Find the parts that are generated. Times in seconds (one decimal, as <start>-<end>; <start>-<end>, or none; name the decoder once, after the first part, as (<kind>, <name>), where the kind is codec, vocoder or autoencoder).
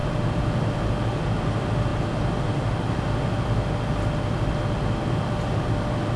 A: none